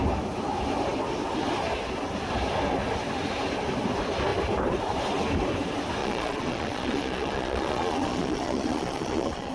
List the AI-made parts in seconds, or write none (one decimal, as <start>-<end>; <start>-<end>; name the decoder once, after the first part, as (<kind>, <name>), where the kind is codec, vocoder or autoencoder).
6.0-9.5 (vocoder, Vocos)